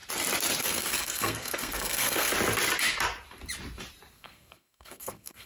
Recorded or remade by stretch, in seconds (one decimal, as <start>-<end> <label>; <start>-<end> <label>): 0.0-0.6 recorded; 0.6-2.3 remade; 2.3-4.1 recorded; 4.1-5.5 remade